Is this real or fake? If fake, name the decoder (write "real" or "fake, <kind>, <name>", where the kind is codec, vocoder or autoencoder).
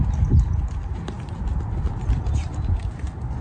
real